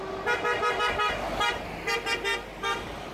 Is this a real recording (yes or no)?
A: yes